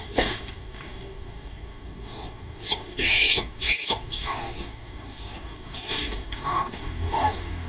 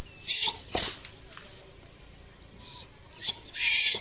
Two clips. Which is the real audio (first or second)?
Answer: second